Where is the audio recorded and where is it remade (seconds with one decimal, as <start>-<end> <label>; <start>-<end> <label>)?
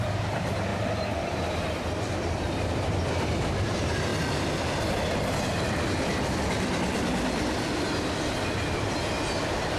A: 0.0-0.7 remade; 0.7-1.4 recorded; 1.4-4.1 remade; 4.1-9.0 recorded; 9.0-9.8 remade